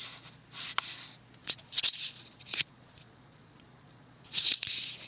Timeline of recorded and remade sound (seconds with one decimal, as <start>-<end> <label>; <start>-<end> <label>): 0.0-1.4 recorded; 1.4-4.5 remade; 4.5-5.1 recorded